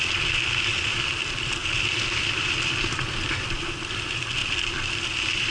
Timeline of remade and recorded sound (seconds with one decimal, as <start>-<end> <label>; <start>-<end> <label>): 0.0-5.5 remade